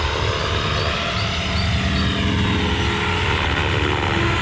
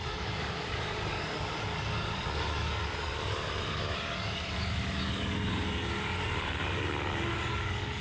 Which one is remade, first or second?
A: second